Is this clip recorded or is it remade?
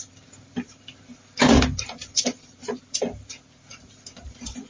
remade